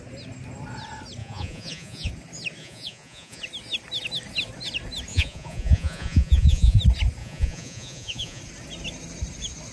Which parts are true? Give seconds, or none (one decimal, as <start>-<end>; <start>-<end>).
0.0-1.2; 2.1-2.6; 3.4-5.1; 6.8-7.2; 8.4-9.7